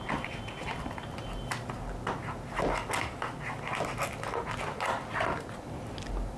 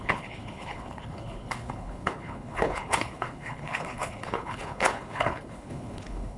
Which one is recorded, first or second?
first